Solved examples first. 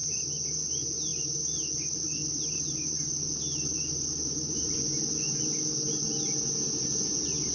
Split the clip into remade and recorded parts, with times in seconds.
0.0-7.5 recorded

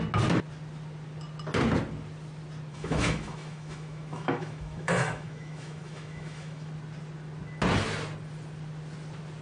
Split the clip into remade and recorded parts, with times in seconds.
0.0-2.7 recorded; 2.7-6.7 remade; 6.7-9.4 recorded

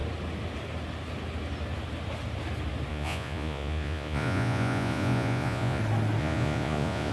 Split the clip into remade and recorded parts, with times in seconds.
0.0-2.9 recorded; 2.9-5.8 remade; 5.8-6.2 recorded; 6.2-7.1 remade

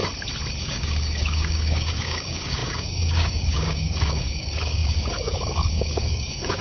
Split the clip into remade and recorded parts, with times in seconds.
0.0-0.6 recorded; 0.6-6.6 remade